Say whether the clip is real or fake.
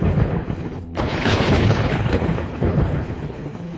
fake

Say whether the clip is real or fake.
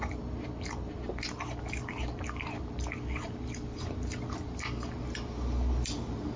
real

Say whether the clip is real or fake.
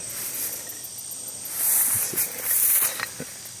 real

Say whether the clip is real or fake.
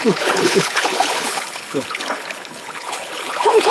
fake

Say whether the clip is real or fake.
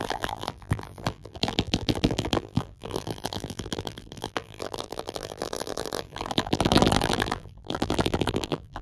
fake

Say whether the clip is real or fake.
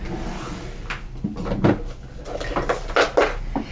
real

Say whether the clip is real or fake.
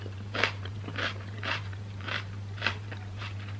fake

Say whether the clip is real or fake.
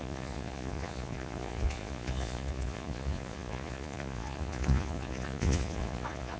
fake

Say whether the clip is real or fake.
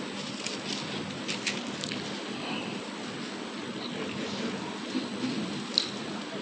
real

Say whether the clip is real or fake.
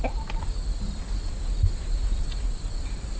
real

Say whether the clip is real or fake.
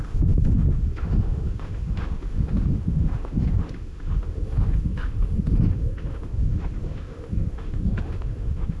fake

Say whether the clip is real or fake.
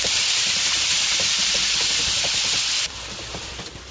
real